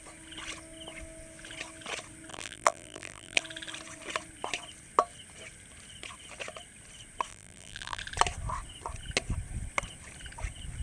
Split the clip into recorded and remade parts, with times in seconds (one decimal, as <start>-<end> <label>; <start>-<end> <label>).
0.0-2.3 recorded; 2.3-3.4 remade; 3.4-7.3 recorded; 7.3-8.0 remade; 8.0-10.8 recorded